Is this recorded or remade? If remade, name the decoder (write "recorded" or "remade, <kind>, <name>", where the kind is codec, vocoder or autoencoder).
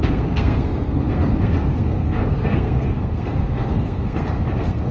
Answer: remade, codec, SNAC